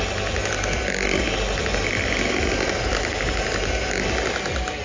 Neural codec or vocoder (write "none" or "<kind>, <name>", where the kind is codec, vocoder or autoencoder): none